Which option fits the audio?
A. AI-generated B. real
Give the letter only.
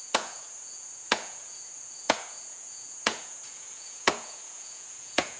A